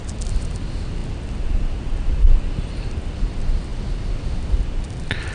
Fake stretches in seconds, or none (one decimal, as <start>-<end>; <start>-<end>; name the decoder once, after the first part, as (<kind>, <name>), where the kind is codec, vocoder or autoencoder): none

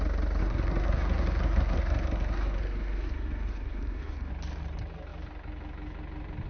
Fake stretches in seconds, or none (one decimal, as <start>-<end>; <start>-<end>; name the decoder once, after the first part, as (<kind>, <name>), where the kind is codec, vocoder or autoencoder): 0.4-4.3 (codec, SNAC)

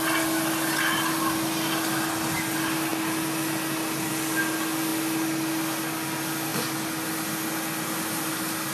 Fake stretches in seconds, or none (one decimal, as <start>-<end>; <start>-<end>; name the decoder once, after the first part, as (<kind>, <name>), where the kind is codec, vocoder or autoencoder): none

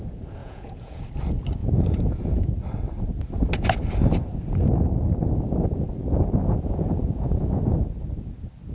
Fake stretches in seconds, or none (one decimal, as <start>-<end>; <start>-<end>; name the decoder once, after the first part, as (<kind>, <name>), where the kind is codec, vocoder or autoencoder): 0.4-1.0 (vocoder, Vocos); 1.6-2.4; 6.4-7.6

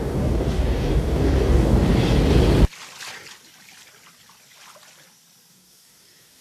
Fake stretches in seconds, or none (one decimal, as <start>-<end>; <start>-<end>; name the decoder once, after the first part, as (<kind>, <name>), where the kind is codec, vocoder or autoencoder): 0.0-1.9 (codec, DAC); 5.5-6.4

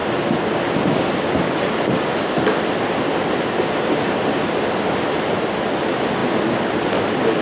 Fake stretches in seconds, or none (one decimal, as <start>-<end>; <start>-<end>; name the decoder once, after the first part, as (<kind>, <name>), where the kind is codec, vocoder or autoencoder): none

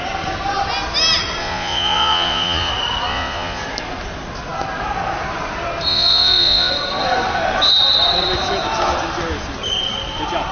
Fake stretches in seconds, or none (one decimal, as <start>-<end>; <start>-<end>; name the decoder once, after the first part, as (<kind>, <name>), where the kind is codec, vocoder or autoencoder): 1.4-2.7 (vocoder, Vocos); 3.1-3.6; 5.9-6.7